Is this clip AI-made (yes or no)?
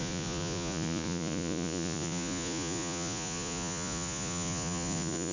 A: yes